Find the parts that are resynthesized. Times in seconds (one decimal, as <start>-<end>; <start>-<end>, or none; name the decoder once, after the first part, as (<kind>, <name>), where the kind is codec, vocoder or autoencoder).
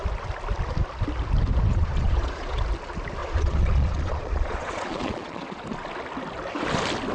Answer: 1.7-2.6 (vocoder, Vocos); 3.2-5.6